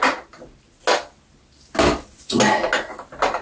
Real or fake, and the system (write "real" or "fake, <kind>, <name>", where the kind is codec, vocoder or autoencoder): real